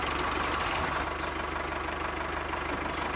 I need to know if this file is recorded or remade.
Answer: recorded